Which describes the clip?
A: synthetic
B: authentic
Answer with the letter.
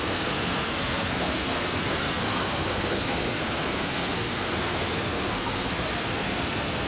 A